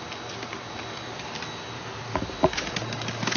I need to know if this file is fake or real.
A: real